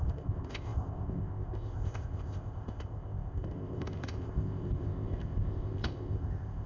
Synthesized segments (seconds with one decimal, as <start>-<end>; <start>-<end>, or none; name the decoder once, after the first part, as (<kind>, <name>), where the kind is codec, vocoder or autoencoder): 0.0-6.7 (codec, ZipCodec)